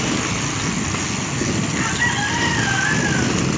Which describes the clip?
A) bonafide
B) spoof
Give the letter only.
A